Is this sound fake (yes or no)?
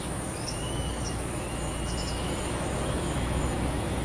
yes